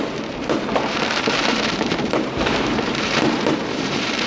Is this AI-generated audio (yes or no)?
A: yes